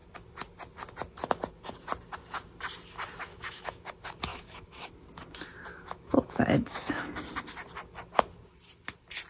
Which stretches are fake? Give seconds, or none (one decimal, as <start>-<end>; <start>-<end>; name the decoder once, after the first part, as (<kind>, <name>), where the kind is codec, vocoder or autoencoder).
3.3-3.9 (autoencoder, DAC-VAE); 4.3-4.9; 5.7-7.1

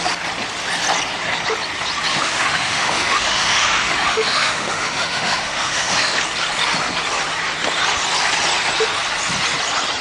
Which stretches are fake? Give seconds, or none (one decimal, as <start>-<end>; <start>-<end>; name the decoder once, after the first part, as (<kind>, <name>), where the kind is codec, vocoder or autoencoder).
2.1-6.2 (autoencoder, DAC-VAE)

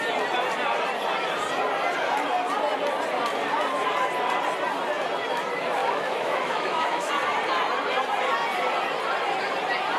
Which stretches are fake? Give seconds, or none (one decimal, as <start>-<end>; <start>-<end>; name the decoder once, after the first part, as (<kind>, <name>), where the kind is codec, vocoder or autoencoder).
5.8-7.1 (autoencoder, DAC-VAE)

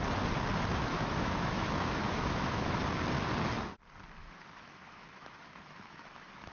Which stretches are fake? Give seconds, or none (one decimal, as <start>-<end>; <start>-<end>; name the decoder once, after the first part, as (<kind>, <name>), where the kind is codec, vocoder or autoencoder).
0.9-2.8 (autoencoder, DAC-VAE); 4.2-6.5

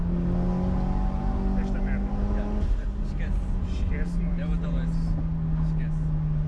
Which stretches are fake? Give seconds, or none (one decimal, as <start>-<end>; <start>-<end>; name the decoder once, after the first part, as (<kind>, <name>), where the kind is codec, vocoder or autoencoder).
none